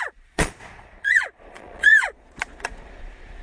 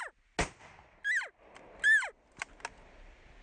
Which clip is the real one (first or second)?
second